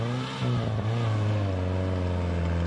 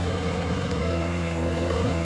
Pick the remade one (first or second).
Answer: second